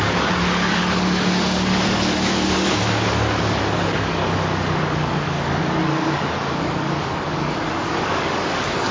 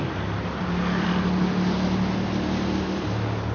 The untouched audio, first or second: second